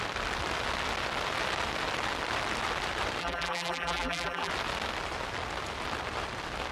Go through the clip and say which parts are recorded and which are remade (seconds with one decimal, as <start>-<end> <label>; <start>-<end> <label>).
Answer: 0.0-3.2 recorded; 3.2-4.5 remade; 4.5-6.7 recorded